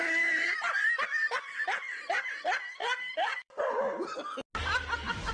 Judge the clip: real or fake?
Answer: real